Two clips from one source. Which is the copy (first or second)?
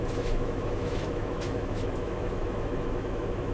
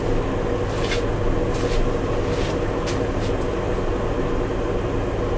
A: first